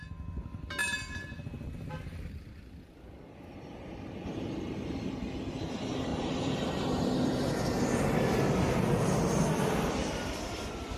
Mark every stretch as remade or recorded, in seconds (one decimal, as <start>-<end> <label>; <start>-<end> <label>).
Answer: 0.0-6.1 recorded; 6.1-6.7 remade; 6.7-11.0 recorded